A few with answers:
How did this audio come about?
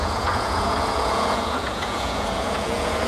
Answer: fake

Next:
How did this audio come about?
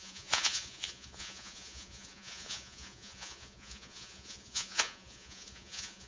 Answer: fake